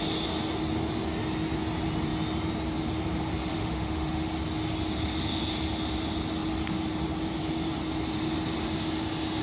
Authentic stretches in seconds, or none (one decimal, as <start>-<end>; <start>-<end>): 0.0-3.5; 4.3-9.4

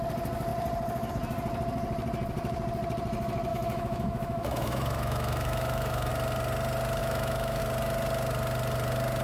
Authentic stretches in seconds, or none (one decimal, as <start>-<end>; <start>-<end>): 0.0-3.5; 6.1-7.0; 7.6-9.2

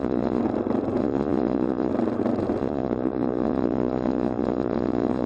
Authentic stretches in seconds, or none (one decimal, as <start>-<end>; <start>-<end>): 0.4-1.0; 1.9-2.6